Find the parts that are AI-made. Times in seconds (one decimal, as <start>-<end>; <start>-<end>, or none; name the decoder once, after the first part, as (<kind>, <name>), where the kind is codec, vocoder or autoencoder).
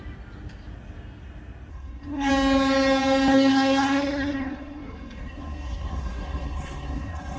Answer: 1.7-2.3 (codec, SNAC); 3.3-7.4